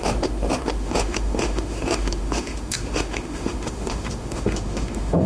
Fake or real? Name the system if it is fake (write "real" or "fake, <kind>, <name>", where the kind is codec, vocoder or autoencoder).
fake, autoencoder, DAC-VAE